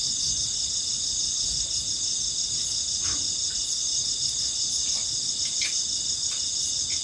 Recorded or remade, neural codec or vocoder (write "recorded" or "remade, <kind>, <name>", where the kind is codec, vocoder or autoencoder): recorded